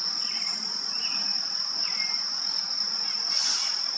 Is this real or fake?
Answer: real